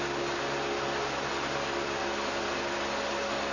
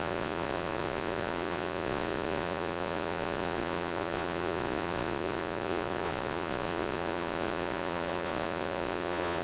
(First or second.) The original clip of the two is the first